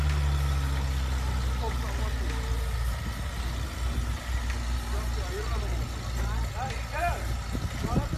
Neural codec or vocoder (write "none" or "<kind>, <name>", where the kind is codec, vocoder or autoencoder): none